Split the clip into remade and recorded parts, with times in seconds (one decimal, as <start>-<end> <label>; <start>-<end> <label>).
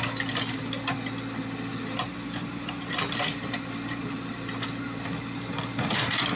0.0-1.7 recorded; 1.7-5.5 remade; 5.5-6.4 recorded